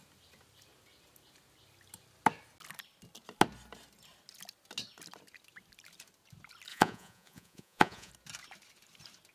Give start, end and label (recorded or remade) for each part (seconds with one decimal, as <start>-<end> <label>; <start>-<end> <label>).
0.0-6.7 recorded; 6.7-8.1 remade; 8.1-9.3 recorded